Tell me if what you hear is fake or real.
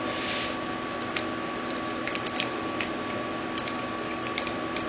real